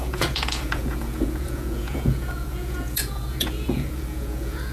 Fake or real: fake